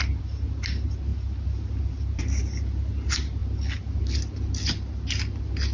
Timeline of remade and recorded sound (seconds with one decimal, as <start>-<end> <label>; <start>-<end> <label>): 0.0-5.7 recorded